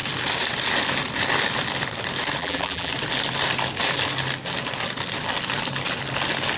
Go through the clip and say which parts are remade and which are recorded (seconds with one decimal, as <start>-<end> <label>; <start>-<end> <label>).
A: 0.0-2.4 recorded; 2.4-2.9 remade; 2.9-6.6 recorded